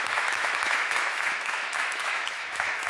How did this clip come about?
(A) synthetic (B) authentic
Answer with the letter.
A